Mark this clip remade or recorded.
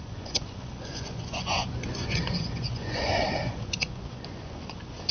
remade